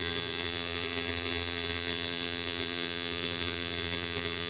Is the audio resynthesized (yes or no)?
yes